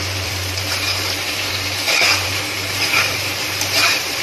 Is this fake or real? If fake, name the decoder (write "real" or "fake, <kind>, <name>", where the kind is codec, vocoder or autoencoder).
fake, vocoder, BigVGAN v2